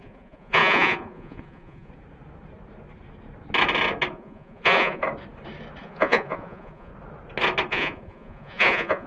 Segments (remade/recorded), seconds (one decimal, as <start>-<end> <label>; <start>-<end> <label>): 0.0-1.9 remade; 1.9-4.1 recorded; 4.1-5.0 remade; 5.0-5.8 recorded; 5.8-6.9 remade; 6.9-7.7 recorded; 7.7-9.1 remade